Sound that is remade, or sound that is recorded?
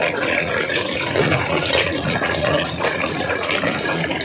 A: remade